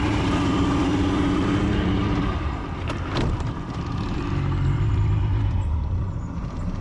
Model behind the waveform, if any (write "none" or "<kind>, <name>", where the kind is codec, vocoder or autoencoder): vocoder, BigVGAN v2